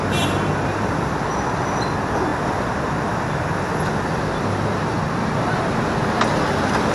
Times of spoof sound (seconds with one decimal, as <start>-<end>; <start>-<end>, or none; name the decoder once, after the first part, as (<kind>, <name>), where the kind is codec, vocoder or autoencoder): none